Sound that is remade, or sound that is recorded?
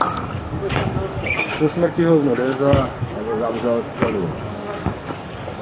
remade